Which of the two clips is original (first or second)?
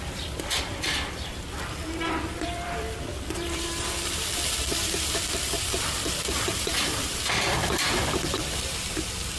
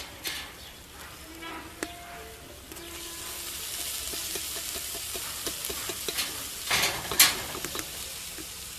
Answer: second